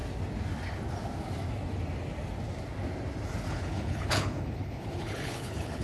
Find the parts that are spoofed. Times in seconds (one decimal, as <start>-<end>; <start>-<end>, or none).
3.5-5.8